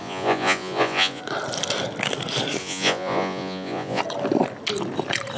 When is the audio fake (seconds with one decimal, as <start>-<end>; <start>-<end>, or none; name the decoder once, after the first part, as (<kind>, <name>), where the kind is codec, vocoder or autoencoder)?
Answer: 0.0-1.2 (vocoder, Vocos); 2.6-4.0